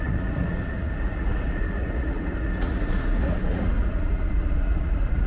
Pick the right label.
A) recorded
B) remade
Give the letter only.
B